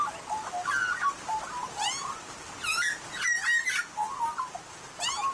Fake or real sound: real